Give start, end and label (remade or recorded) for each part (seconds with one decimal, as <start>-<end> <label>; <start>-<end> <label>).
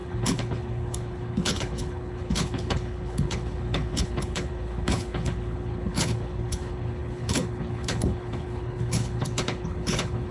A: 0.0-10.3 remade